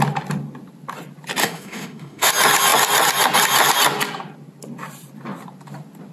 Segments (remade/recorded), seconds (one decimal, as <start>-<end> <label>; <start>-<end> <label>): 0.0-1.4 recorded; 1.4-2.3 remade; 2.3-6.1 recorded